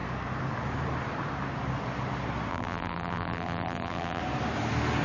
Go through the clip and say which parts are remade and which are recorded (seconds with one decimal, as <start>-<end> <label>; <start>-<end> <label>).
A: 0.0-2.5 recorded; 2.5-4.2 remade; 4.2-5.0 recorded